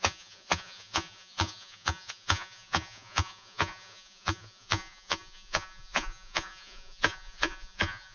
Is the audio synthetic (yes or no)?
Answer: yes